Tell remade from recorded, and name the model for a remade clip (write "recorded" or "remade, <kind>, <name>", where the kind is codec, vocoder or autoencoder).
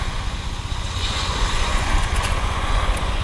remade, vocoder, Vocos